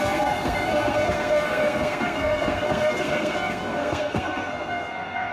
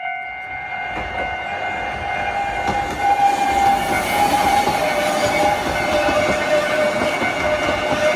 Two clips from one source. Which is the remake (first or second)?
first